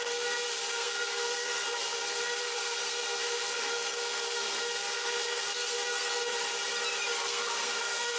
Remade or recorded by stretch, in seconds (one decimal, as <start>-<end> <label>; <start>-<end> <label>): 0.0-6.3 remade; 6.3-7.2 recorded; 7.2-8.2 remade